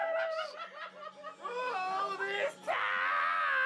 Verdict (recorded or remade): recorded